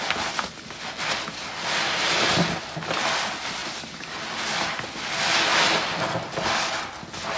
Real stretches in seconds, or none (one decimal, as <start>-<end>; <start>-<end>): 0.0-7.4